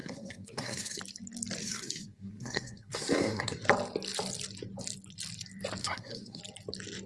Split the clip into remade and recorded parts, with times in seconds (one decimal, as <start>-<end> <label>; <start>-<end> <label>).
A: 0.0-1.0 remade; 1.0-1.6 recorded; 1.6-3.6 remade; 3.6-5.8 recorded; 5.8-6.4 remade; 6.4-7.1 recorded